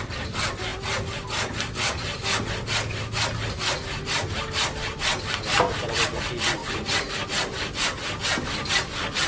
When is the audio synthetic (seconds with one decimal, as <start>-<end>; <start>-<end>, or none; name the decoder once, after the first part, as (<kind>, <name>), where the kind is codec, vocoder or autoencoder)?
none